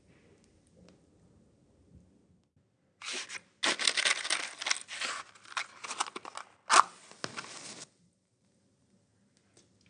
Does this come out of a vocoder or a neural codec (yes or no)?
no